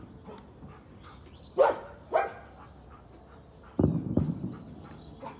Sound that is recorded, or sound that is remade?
recorded